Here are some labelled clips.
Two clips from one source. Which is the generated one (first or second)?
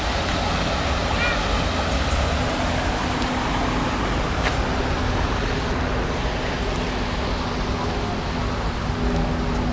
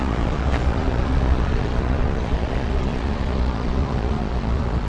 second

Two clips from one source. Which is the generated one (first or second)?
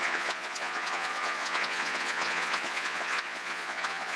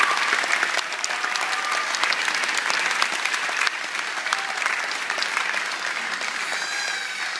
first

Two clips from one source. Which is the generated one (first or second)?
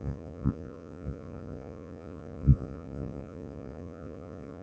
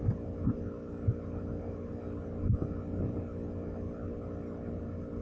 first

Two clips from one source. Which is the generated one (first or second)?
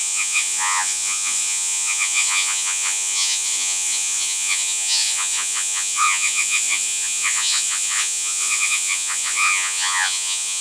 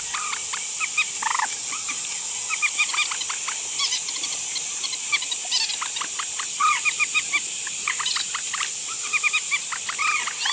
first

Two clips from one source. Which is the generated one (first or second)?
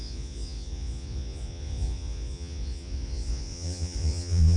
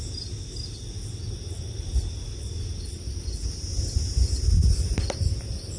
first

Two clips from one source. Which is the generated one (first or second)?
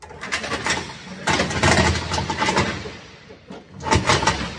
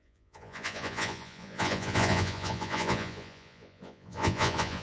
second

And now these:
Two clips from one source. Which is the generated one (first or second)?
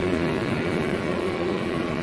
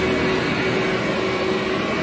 first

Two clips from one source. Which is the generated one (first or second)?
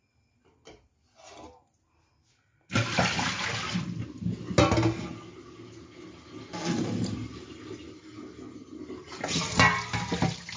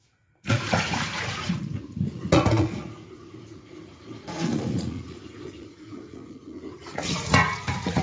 second